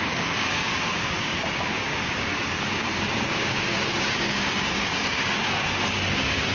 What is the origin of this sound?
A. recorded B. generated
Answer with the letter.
B